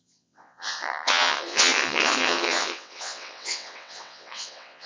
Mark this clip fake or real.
fake